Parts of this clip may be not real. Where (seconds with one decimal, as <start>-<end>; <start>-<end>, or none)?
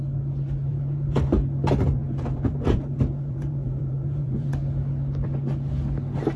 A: 0.7-1.3; 2.0-4.5